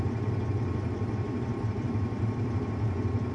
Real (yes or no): no